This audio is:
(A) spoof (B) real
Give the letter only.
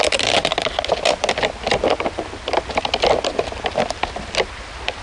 B